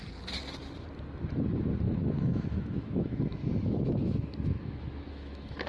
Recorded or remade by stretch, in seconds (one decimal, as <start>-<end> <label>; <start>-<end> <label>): 0.0-2.0 recorded; 2.0-5.7 remade